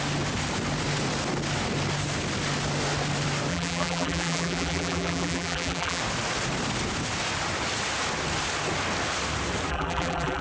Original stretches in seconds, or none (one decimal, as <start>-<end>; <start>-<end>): 0.0-3.5; 6.0-9.7